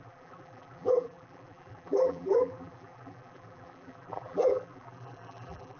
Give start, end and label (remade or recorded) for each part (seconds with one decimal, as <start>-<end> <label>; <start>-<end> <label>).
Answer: 0.0-5.8 remade